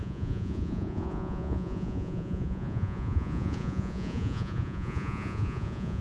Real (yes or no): no